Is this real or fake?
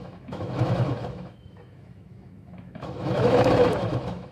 fake